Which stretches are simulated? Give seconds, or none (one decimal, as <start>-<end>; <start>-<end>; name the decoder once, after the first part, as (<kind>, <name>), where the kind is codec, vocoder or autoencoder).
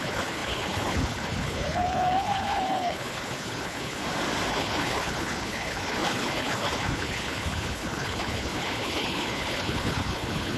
0.0-4.0 (codec, HILCodec); 4.5-10.6